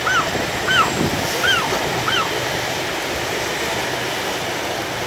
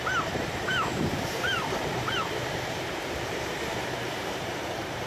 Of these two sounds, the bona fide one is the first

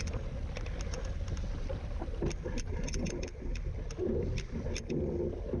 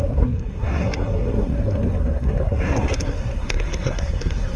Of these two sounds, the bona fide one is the first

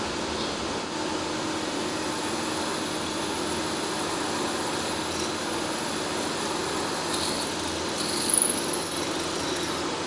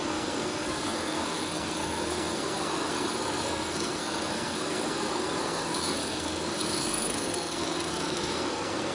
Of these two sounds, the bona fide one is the first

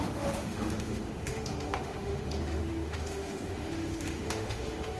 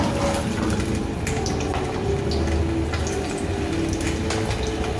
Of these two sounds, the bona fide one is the second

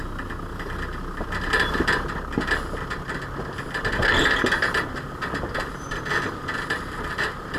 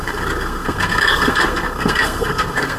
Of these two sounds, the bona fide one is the first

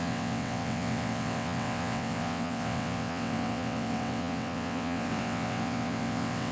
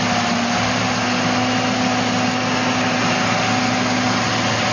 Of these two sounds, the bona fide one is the second